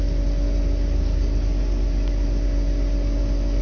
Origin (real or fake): real